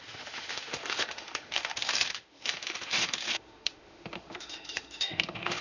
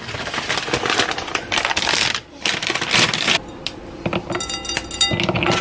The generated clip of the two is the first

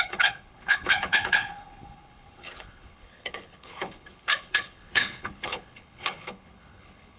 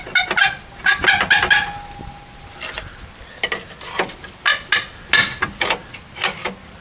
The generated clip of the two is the first